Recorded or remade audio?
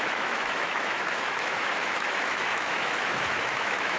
remade